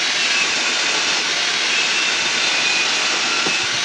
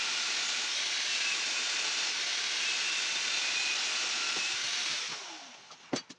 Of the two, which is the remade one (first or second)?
second